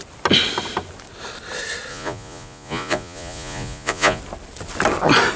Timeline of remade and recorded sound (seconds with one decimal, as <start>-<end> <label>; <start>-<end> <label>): 0.0-1.9 recorded; 1.9-4.2 remade; 4.2-5.4 recorded